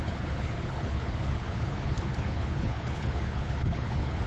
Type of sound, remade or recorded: remade